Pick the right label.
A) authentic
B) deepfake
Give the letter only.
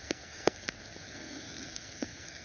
B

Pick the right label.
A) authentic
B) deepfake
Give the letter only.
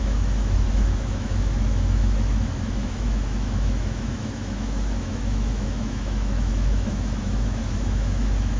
B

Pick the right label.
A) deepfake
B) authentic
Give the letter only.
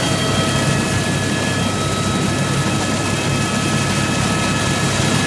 B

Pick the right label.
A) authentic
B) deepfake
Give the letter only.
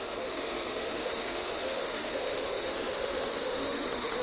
B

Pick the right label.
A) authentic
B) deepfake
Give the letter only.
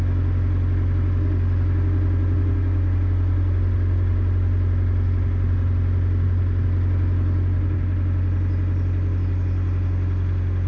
A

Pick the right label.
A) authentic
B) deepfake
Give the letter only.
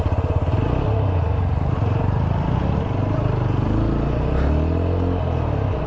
A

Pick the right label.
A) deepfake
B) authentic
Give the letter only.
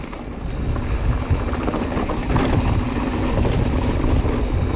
B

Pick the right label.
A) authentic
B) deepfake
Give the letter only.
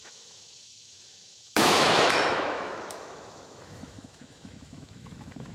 B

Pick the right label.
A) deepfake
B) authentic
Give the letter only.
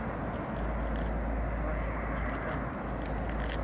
B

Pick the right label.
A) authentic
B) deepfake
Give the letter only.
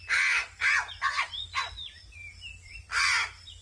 A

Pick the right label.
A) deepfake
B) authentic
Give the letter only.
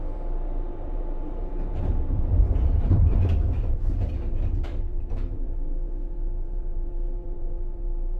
A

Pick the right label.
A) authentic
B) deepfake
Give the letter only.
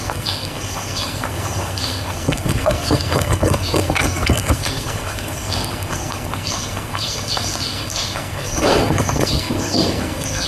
B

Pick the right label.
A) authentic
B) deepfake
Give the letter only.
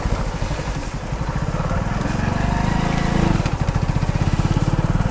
A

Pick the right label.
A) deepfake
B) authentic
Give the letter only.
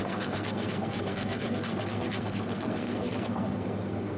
A